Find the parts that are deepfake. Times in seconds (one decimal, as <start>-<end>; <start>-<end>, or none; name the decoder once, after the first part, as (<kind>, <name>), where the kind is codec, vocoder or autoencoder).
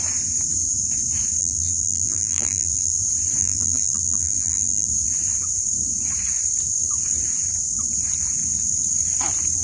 1.4-3.0 (vocoder, BigVGAN v2); 3.4-4.9